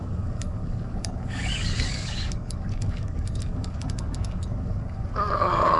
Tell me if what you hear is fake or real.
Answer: fake